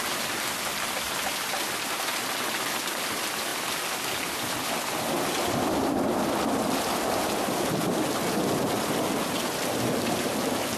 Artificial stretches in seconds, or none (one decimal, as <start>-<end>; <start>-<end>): none